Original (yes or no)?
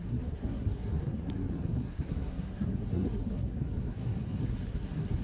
no